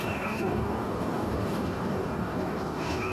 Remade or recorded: remade